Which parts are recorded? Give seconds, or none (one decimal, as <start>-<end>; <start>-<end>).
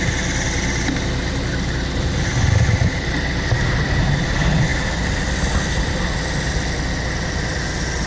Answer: 0.0-8.1